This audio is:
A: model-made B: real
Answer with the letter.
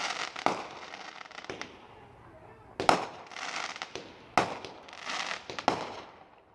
B